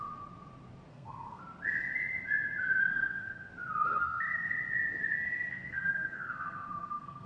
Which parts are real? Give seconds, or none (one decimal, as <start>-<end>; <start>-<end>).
0.0-0.9; 1.4-2.9; 3.5-3.9; 4.5-5.5